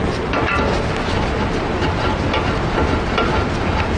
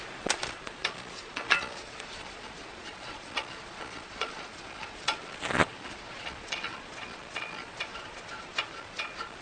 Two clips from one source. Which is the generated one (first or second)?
second